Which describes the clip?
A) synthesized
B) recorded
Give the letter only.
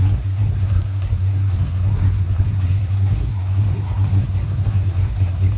A